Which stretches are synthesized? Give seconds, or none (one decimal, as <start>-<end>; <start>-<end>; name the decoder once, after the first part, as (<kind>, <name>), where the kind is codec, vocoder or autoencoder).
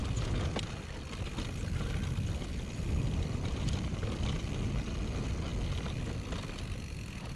1.3-3.9 (vocoder, BigVGAN v2)